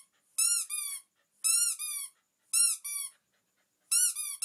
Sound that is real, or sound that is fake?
real